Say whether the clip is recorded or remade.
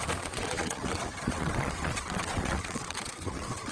remade